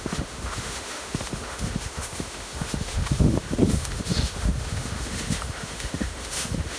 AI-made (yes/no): yes